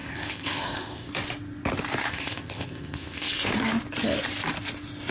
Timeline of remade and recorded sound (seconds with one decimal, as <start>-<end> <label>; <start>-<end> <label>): 0.0-1.1 remade; 1.1-2.1 recorded; 2.1-3.5 remade; 3.5-5.1 recorded